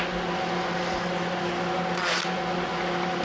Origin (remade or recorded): recorded